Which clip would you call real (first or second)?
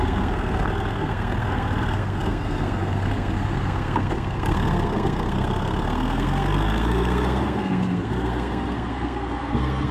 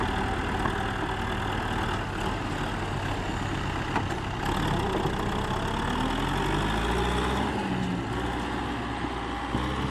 second